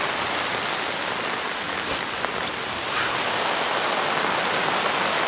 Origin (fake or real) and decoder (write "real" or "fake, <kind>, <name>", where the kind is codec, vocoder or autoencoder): real